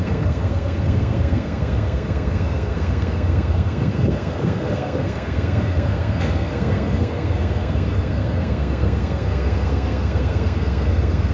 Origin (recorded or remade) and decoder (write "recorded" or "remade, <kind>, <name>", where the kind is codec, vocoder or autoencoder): remade, codec, SNAC